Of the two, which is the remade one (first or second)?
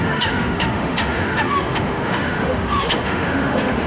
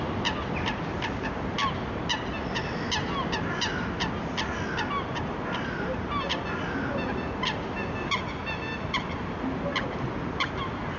first